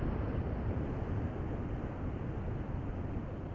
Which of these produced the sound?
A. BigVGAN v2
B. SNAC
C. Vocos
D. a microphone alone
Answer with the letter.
D